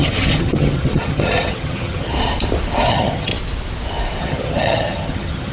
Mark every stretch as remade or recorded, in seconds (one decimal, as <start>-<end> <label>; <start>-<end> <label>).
0.0-2.1 remade; 2.1-2.9 recorded; 2.9-3.3 remade; 3.3-4.2 recorded; 4.2-5.5 remade